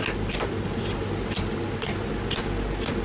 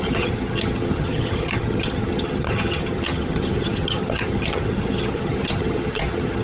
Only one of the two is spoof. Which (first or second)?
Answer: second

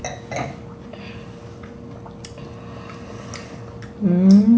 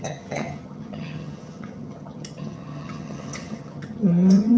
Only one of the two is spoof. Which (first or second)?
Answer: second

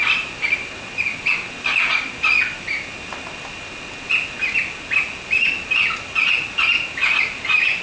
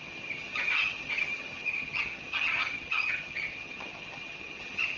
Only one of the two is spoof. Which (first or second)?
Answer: second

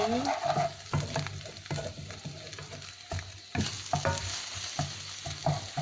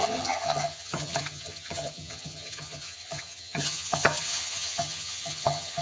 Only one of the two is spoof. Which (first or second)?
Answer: second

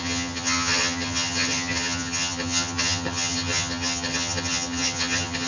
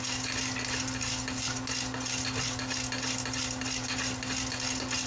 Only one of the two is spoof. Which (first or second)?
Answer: first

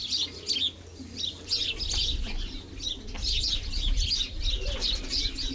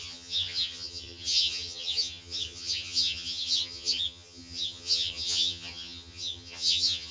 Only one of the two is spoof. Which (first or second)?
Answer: second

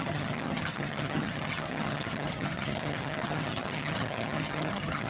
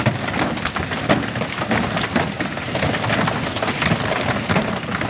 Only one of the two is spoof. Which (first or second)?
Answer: first